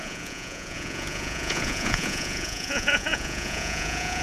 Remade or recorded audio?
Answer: remade